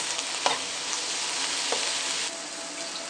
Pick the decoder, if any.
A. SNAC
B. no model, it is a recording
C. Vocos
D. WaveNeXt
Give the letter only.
B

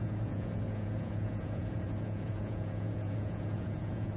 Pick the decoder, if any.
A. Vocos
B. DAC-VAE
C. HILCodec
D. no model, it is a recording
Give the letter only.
A